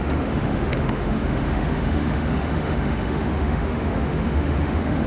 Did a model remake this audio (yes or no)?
yes